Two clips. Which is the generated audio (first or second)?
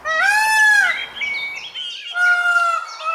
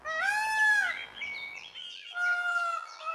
second